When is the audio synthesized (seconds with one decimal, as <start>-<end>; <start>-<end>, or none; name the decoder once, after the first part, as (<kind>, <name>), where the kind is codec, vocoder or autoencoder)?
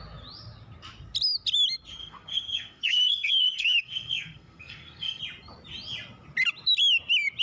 2.0-5.2 (codec, SNAC)